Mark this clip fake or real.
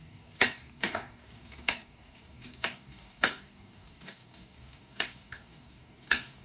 fake